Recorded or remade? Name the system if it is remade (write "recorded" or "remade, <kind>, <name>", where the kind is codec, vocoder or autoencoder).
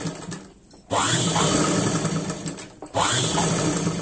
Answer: recorded